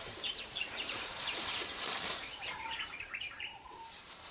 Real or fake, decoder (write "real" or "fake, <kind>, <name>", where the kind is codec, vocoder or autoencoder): fake, vocoder, BigVGAN v2